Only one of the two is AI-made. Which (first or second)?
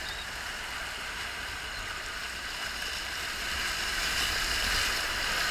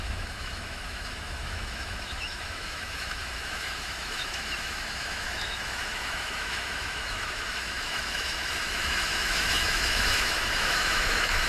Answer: second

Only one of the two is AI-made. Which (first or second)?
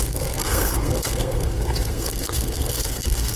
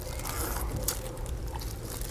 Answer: first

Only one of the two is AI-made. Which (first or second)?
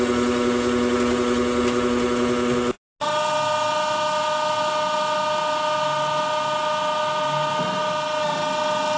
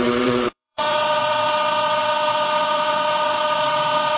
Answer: second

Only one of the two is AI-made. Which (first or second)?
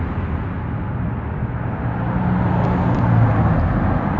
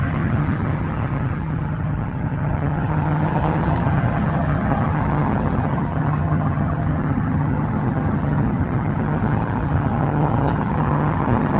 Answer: second